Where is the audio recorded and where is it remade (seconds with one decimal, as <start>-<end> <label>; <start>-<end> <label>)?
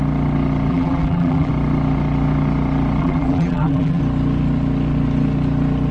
0.0-0.7 recorded; 0.7-1.5 remade; 1.5-3.0 recorded; 3.0-4.0 remade; 4.0-5.9 recorded